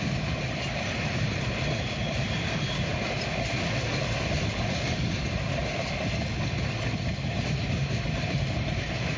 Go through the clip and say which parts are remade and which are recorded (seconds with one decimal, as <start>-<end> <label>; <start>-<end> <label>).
0.0-5.6 remade; 5.6-7.7 recorded; 7.7-9.2 remade